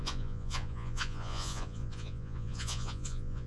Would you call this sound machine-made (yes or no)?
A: yes